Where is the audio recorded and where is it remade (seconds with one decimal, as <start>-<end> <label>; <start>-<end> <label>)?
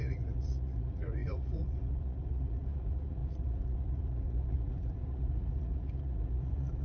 0.0-6.8 remade